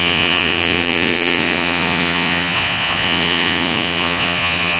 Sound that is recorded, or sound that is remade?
remade